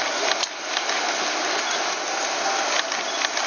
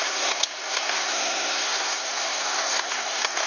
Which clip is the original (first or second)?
first